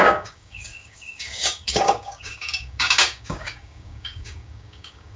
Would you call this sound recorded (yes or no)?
no